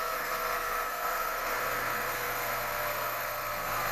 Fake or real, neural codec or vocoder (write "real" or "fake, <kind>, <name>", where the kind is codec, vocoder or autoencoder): fake, codec, SNAC